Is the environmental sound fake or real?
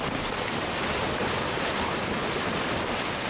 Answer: fake